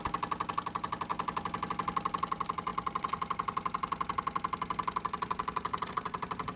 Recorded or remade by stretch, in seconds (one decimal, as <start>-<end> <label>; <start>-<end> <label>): 0.0-6.6 recorded